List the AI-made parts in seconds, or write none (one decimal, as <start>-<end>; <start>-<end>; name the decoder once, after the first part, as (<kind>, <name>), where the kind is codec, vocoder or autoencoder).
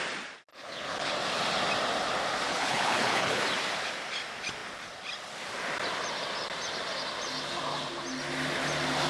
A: 0.5-1.1 (codec, HILCodec); 2.5-3.4